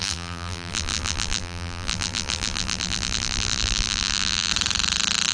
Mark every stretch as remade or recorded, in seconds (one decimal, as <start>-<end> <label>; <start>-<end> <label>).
0.0-4.5 remade; 4.5-5.3 recorded